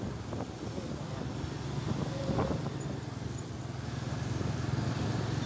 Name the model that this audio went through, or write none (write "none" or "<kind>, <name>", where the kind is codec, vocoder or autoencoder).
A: none